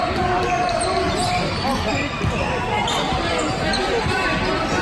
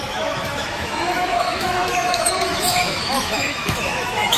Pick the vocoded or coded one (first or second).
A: second